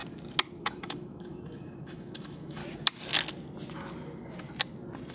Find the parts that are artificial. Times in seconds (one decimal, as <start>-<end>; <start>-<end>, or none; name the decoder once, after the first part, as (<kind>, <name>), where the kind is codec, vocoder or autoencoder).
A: 0.6-2.6 (autoencoder, DAC-VAE)